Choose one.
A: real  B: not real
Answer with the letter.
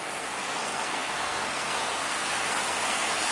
B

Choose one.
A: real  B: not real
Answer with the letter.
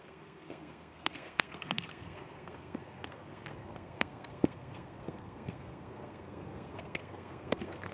B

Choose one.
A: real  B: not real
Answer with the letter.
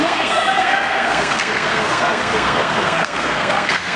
B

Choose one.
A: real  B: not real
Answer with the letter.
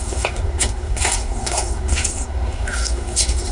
B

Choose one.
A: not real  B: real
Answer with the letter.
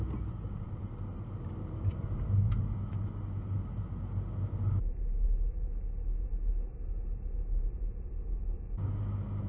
B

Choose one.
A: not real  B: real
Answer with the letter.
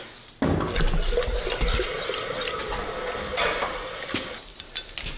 B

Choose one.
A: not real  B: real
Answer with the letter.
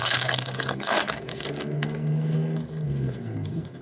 A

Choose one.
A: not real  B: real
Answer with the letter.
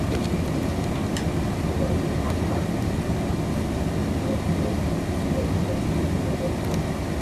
B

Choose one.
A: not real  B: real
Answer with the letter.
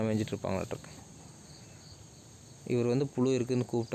B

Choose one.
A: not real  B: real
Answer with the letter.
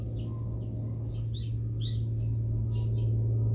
B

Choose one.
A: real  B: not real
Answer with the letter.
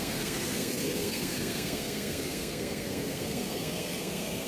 B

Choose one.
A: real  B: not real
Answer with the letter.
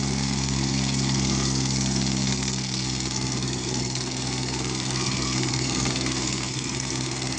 B